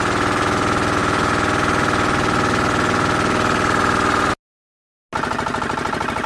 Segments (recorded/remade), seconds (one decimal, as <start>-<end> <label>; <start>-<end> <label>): 0.0-6.3 recorded